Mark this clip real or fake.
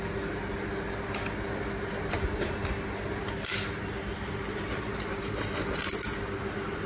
real